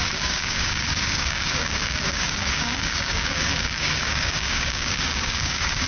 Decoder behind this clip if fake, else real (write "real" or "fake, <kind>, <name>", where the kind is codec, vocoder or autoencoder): fake, codec, DAC